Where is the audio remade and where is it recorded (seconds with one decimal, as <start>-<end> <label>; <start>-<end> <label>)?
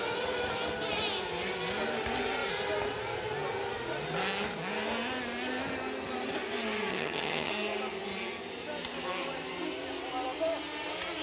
0.0-6.9 recorded; 6.9-7.5 remade; 7.5-11.2 recorded